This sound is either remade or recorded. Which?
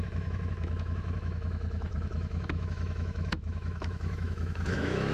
remade